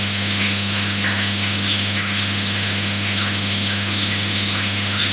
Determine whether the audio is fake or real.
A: fake